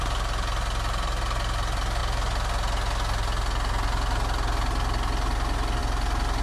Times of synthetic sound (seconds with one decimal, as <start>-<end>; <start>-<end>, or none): none